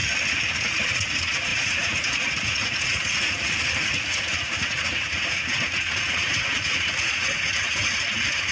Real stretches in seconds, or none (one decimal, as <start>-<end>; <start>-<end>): 0.0-0.7